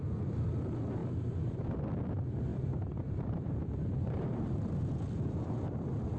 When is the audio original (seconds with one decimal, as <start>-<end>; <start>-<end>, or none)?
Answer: 0.0-1.0; 1.6-2.5; 4.8-6.2